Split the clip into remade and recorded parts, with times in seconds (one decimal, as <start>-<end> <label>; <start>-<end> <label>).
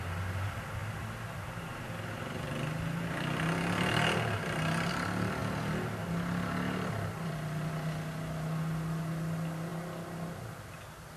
0.0-11.2 recorded